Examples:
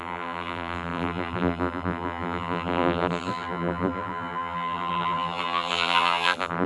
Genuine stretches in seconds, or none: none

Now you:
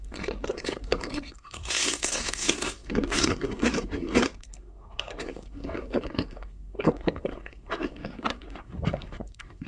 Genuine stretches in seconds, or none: none